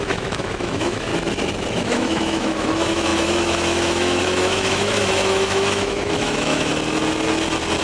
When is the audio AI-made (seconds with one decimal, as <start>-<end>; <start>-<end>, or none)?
0.0-1.1; 1.7-6.7